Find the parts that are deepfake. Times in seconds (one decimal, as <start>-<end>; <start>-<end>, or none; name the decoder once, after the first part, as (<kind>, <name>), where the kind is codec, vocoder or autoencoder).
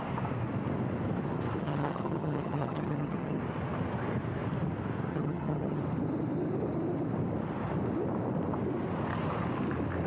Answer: 1.6-3.4 (vocoder, HiFi-GAN); 5.1-5.8